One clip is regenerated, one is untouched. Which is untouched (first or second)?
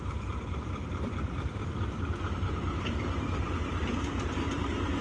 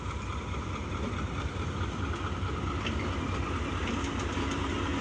second